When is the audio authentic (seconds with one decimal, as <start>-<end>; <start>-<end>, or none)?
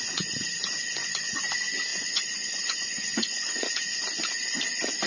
0.0-1.0; 1.5-1.9; 3.7-5.1